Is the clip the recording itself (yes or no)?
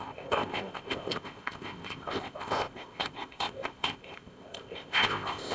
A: no